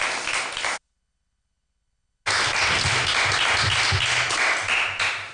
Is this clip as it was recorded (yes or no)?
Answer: yes